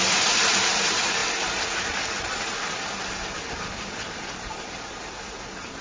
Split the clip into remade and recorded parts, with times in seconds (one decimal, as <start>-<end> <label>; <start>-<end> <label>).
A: 0.0-1.2 remade; 1.2-2.4 recorded; 2.4-5.8 remade